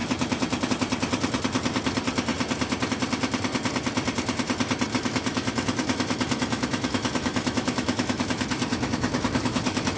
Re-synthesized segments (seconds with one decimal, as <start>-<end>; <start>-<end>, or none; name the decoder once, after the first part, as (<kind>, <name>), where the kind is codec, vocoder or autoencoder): 4.9-10.0 (autoencoder, DAC-VAE)